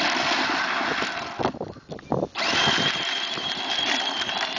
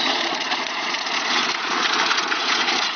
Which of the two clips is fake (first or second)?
second